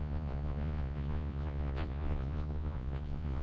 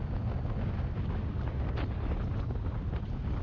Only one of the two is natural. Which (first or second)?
second